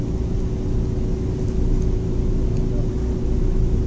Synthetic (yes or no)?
no